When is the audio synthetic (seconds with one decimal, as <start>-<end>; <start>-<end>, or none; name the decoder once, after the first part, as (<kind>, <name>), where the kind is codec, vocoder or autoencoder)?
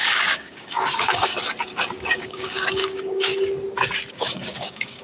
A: 0.0-1.3 (codec, DAC); 2.1-3.3; 4.1-5.0